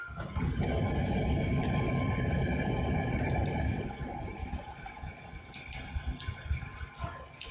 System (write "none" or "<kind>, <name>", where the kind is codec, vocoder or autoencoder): none